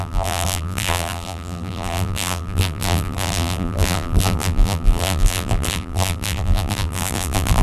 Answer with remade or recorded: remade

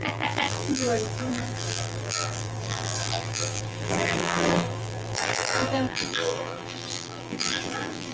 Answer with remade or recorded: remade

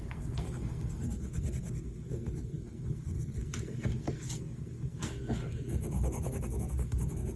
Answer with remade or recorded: remade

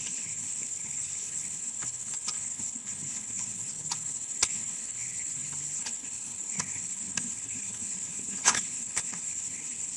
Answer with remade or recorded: remade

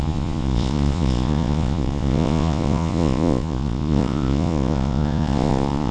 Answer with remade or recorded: remade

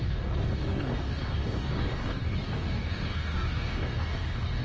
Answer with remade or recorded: remade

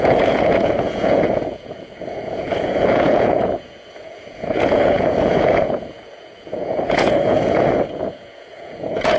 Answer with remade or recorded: remade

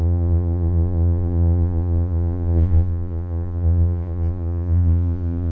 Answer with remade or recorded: remade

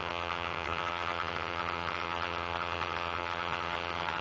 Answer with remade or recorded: remade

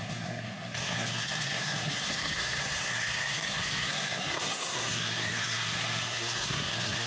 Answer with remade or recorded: remade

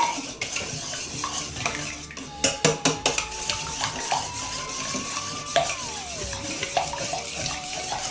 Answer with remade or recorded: recorded